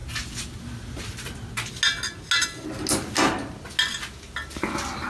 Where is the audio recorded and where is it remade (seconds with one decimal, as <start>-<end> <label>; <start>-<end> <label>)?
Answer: 0.0-5.1 recorded